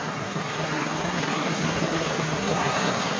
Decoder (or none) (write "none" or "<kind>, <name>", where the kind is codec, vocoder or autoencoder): codec, SNAC